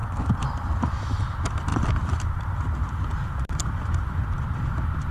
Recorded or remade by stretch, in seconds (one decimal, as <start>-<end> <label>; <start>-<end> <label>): 0.0-0.9 remade; 0.9-1.7 recorded; 1.7-4.2 remade; 4.2-5.1 recorded